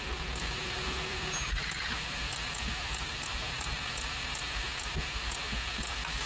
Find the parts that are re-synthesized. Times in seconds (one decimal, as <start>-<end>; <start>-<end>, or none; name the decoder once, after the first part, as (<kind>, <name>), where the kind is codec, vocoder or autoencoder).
none